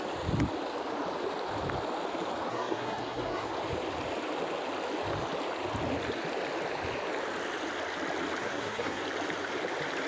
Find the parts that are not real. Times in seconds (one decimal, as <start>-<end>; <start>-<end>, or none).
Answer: 2.5-3.5; 8.4-9.0